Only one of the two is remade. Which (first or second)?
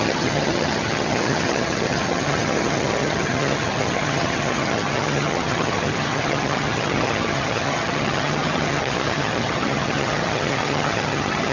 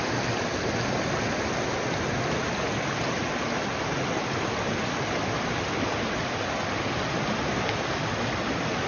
first